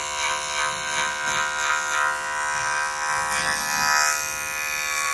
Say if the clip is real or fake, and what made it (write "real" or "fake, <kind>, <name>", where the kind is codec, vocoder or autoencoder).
real